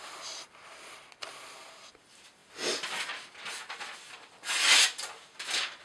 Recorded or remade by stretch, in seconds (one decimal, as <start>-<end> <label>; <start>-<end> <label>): 0.0-5.8 recorded